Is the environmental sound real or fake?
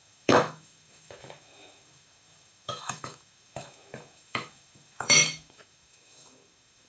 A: fake